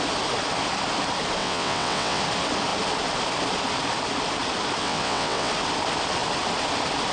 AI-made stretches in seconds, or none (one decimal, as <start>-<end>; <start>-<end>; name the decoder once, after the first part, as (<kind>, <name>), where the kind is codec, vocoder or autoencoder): 1.4-2.2 (vocoder, WaveNeXt); 4.8-5.5